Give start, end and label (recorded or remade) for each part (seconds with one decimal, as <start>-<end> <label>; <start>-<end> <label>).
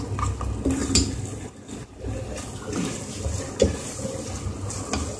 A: 0.0-5.2 recorded